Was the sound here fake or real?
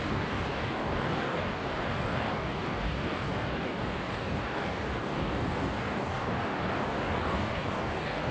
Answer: fake